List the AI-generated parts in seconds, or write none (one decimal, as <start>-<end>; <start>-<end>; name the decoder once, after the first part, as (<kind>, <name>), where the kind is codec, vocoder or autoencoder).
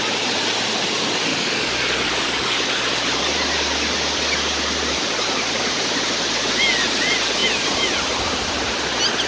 1.3-2.8 (codec, DAC)